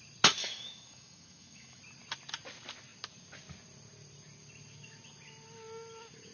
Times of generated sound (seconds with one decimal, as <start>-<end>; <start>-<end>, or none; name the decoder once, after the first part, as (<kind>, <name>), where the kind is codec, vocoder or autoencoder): 0.4-1.8 (autoencoder, DAC-VAE)

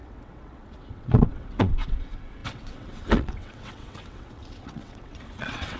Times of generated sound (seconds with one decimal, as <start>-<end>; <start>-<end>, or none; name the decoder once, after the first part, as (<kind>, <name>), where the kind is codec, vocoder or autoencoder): 0.0-5.8 (vocoder, WaveNeXt)

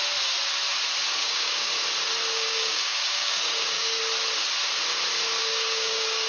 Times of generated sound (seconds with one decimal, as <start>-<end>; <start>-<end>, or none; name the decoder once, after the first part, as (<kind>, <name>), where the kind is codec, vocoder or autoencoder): 1.2-1.7 (codec, DAC); 2.3-4.0; 5.4-6.3

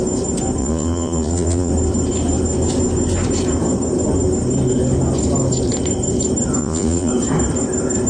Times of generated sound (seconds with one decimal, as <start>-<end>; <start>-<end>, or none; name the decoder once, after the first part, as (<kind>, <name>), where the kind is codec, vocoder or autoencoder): 0.6-1.7 (vocoder, Vocos); 6.6-7.1

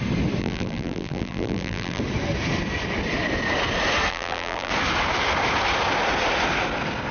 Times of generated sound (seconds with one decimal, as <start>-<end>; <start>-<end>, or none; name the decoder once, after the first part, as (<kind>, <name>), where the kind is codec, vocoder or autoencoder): 0.4-2.0 (vocoder, BigVGAN v2); 4.1-4.7

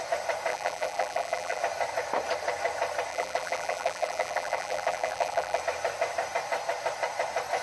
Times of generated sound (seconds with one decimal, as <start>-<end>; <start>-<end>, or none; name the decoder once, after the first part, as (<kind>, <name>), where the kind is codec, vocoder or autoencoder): 0.5-1.6 (vocoder, BigVGAN v2); 3.1-5.6